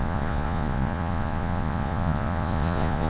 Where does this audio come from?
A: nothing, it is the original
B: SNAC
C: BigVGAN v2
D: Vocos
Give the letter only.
D